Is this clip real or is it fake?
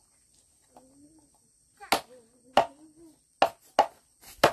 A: real